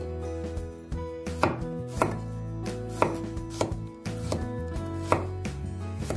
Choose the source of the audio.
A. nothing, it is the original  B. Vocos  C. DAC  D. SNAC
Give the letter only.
A